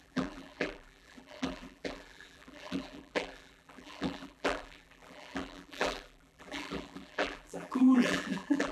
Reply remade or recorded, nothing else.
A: remade